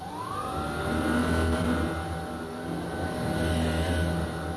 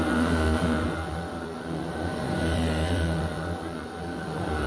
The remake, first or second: second